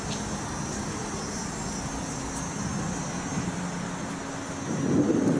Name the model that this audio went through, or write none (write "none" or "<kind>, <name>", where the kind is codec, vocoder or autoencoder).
none